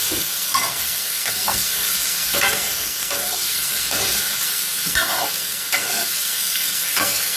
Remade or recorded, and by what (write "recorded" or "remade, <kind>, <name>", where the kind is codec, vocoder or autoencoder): remade, codec, SNAC